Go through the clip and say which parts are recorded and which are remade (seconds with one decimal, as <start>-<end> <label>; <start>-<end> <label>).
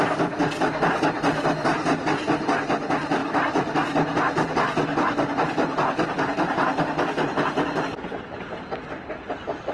0.0-9.7 recorded